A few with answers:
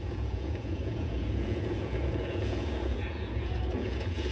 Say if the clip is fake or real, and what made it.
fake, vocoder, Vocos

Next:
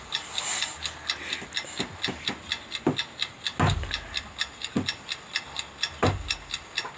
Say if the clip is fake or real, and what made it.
real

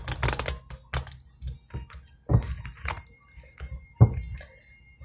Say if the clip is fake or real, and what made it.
real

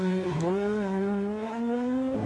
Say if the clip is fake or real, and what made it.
fake, codec, SNAC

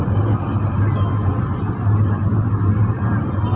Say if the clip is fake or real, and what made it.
real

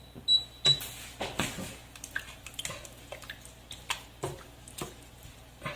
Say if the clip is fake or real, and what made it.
real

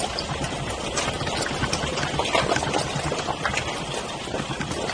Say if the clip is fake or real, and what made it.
real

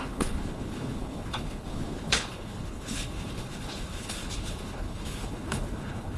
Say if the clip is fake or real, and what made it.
fake, codec, HILCodec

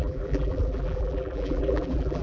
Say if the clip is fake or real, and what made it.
fake, vocoder, BigVGAN v2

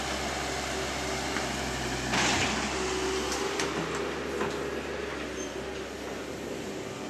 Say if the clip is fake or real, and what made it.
real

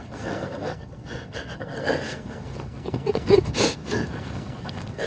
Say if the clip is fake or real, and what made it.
fake, codec, SNAC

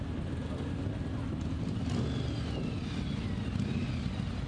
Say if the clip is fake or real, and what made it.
real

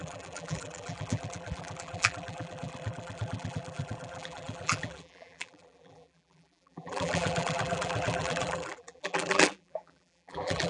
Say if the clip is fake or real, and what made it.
fake, vocoder, BigVGAN v2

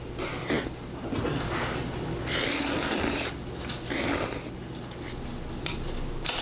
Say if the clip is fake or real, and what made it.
real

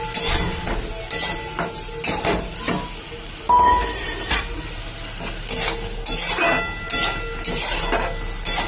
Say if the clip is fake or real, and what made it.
real